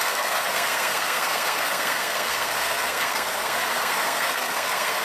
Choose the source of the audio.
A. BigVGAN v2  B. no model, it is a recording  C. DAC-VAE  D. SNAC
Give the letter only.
D